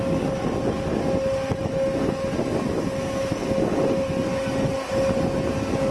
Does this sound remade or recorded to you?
recorded